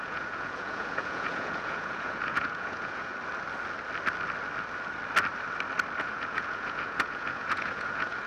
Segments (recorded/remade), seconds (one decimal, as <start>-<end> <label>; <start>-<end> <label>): 0.0-3.1 remade; 3.1-6.0 recorded; 6.0-8.3 remade